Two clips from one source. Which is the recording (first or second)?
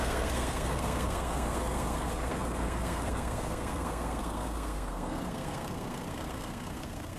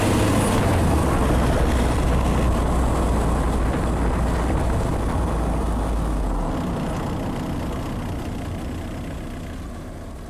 second